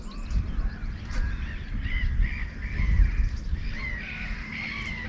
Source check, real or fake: fake